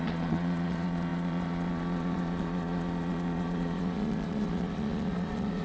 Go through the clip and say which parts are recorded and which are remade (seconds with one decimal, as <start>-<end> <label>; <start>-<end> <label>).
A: 0.0-5.6 remade